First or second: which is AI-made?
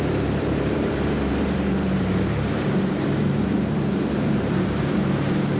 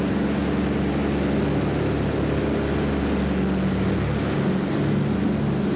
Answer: first